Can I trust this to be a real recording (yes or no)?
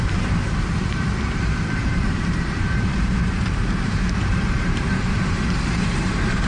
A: no